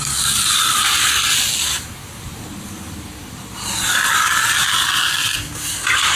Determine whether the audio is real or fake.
real